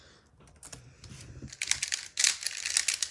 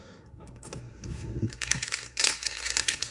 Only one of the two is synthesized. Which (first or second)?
second